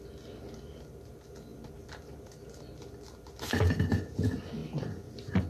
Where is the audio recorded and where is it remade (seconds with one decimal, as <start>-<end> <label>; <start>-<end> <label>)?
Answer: 0.0-5.5 recorded